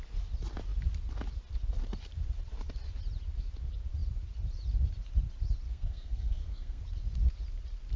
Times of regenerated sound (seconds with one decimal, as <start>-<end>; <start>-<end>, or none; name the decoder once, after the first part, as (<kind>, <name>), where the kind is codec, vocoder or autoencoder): 5.7-6.8 (codec, SNAC)